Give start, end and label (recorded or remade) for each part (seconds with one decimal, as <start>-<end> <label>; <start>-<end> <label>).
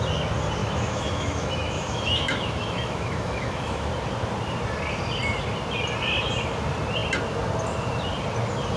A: 0.0-0.6 recorded; 0.6-3.9 remade; 3.9-8.8 recorded